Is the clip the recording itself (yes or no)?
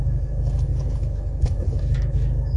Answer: no